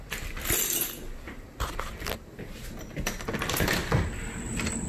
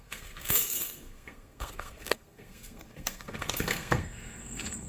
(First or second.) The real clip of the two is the first